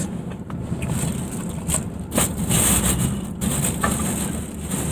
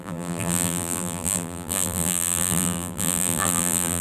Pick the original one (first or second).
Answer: first